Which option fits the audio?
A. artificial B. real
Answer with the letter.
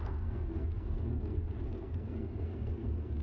A